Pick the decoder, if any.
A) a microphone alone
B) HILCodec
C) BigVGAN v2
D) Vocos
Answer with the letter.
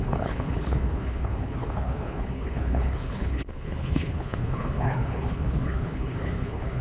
B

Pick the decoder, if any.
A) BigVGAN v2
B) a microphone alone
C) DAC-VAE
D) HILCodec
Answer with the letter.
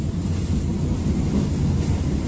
B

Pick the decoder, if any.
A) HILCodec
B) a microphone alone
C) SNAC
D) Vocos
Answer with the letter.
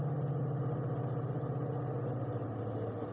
B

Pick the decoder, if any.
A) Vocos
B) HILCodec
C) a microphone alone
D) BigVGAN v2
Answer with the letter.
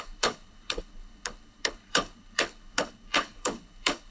B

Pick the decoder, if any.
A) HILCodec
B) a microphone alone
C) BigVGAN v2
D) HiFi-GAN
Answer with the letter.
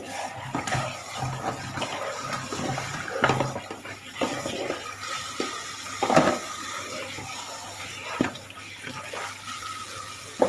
B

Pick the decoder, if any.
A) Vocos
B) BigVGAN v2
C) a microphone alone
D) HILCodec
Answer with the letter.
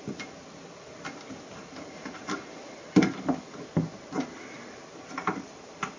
C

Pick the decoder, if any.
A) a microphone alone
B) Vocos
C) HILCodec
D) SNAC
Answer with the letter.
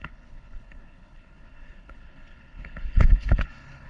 C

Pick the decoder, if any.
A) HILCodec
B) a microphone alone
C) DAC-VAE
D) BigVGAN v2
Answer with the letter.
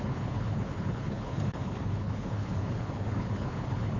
A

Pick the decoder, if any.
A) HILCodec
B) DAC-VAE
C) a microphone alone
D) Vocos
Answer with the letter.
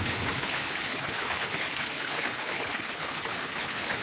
A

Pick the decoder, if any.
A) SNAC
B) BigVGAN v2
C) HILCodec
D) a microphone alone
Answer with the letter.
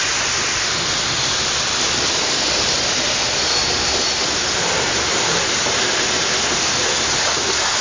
D